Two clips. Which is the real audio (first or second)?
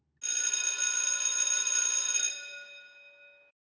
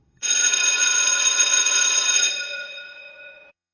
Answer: first